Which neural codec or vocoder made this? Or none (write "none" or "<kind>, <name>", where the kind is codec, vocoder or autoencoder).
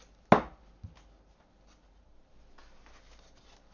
none